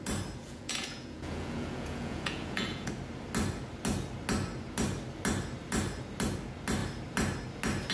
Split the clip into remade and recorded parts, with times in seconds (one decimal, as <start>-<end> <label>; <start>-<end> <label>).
0.0-0.4 recorded; 0.4-2.9 remade; 2.9-7.9 recorded